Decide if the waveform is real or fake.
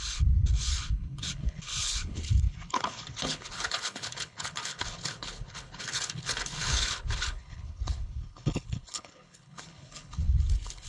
fake